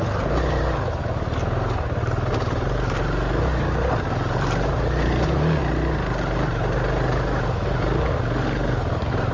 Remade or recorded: recorded